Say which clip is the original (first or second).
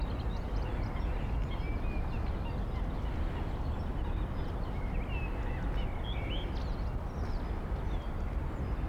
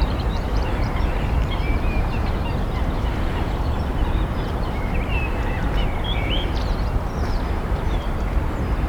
first